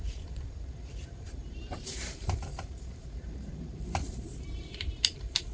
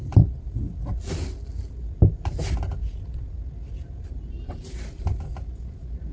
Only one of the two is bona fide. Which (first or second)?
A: second